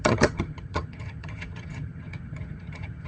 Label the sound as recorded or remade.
remade